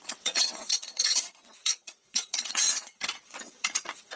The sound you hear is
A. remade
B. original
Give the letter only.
A